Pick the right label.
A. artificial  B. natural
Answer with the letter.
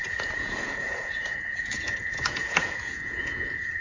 A